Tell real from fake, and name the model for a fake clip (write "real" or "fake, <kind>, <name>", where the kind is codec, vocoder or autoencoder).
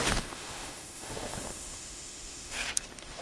fake, autoencoder, DAC-VAE